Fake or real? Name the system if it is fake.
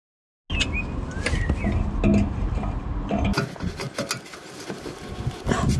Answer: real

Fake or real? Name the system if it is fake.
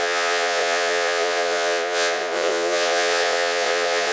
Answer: fake, vocoder, Vocos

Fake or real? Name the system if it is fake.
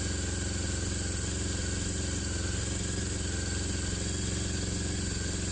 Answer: real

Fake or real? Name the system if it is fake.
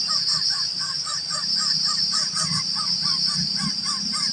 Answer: real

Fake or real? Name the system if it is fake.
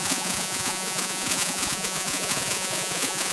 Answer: fake, vocoder, Vocos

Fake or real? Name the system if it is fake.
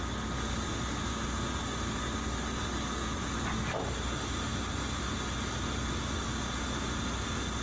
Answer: real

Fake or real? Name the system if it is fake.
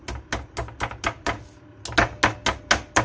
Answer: real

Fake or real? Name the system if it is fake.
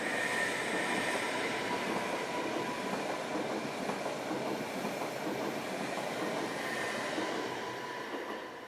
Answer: real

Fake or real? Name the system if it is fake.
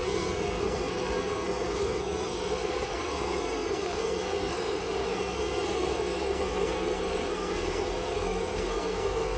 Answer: fake, codec, SNAC